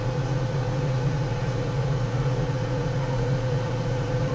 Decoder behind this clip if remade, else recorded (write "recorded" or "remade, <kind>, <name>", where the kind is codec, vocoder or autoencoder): remade, vocoder, Vocos